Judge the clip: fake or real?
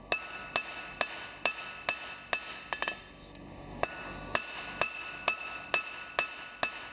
real